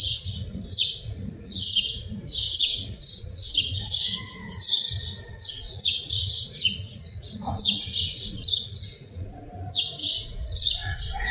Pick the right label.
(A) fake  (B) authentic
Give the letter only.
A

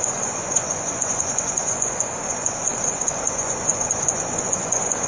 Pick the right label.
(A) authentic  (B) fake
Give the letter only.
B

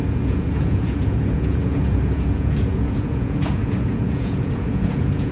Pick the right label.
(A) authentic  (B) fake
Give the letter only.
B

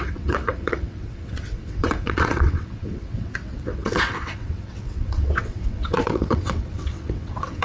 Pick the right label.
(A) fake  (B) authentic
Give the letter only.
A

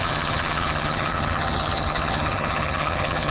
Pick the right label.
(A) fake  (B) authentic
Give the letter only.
A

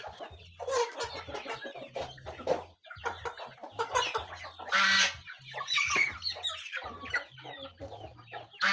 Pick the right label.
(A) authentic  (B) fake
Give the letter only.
A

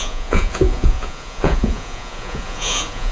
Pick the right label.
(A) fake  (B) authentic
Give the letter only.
A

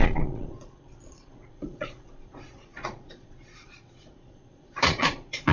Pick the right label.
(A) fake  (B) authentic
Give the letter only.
A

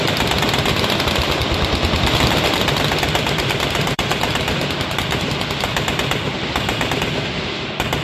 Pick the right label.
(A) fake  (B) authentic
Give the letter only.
A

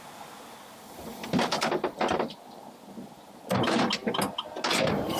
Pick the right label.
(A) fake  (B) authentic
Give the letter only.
B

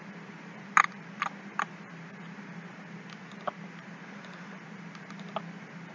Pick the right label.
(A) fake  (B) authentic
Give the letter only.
B